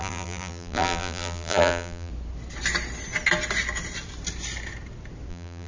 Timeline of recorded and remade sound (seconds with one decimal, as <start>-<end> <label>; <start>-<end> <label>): 0.0-2.1 remade; 2.1-5.3 recorded; 5.3-5.7 remade